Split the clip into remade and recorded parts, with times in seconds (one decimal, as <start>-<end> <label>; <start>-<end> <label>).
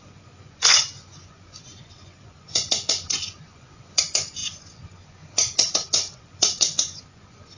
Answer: 0.0-7.6 remade